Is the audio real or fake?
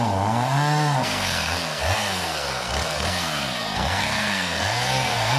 fake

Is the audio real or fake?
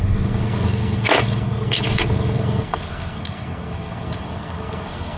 fake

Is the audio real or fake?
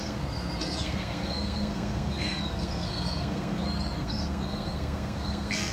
fake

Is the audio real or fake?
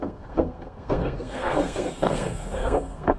fake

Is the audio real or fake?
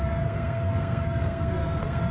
fake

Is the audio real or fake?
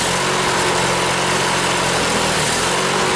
real